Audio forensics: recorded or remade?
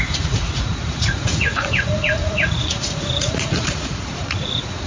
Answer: remade